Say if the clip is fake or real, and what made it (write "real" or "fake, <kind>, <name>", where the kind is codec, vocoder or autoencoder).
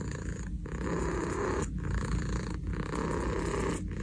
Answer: real